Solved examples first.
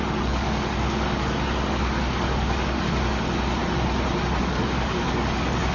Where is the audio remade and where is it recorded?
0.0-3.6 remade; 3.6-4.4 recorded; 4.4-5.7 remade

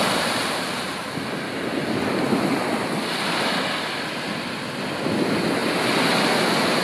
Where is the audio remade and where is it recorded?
0.0-6.8 recorded

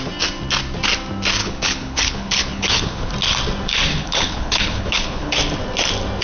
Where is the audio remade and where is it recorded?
0.0-1.4 recorded; 1.4-3.1 remade; 3.1-3.9 recorded; 3.9-5.3 remade; 5.3-6.2 recorded

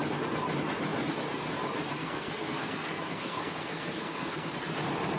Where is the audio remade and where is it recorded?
0.0-2.0 recorded; 2.0-4.5 remade; 4.5-5.2 recorded